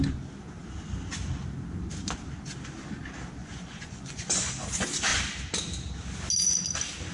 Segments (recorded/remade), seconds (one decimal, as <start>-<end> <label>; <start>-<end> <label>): 0.0-3.4 recorded; 3.4-4.5 remade; 4.5-7.1 recorded